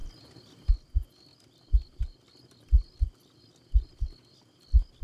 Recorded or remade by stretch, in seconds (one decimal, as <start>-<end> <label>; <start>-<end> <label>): 0.0-5.0 recorded